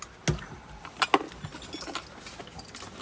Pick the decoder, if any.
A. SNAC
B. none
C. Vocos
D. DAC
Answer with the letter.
B